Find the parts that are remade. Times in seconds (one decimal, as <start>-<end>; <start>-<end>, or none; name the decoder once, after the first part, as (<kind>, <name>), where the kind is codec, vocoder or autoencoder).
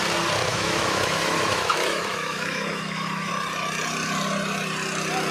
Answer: 0.5-3.3 (autoencoder, DAC-VAE)